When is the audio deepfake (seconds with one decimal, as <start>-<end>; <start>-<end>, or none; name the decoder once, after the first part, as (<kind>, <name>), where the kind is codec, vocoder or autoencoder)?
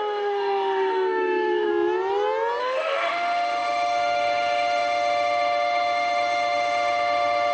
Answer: 0.0-1.7 (autoencoder, DAC-VAE); 2.6-7.5